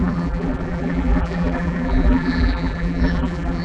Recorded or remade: remade